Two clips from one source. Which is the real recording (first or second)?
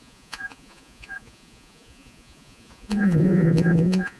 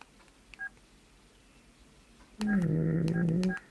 second